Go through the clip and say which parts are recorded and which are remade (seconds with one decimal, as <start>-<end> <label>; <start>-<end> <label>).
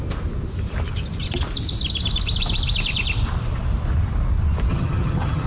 0.0-4.7 recorded; 4.7-5.5 remade